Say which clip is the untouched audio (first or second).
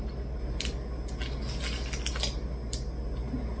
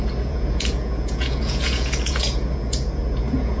first